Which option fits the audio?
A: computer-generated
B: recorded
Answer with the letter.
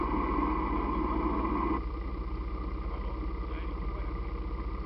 B